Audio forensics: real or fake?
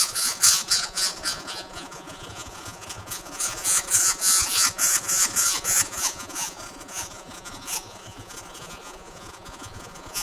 fake